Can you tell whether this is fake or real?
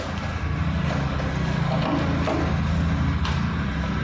real